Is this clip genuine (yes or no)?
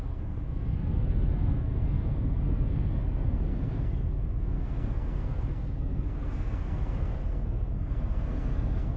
no